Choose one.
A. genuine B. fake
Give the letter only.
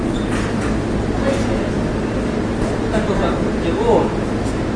A